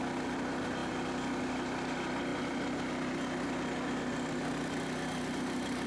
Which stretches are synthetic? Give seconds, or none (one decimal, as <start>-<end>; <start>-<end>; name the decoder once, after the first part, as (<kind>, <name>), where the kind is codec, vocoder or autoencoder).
none